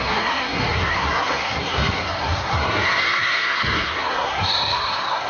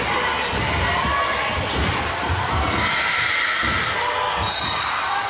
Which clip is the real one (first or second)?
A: second